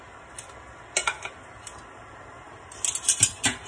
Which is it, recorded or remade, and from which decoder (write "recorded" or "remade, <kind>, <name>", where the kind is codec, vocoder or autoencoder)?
recorded